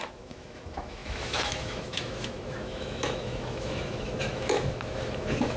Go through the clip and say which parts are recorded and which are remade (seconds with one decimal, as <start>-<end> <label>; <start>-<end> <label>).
0.0-5.6 remade